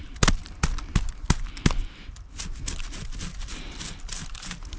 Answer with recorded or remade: recorded